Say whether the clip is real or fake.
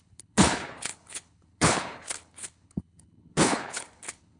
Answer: fake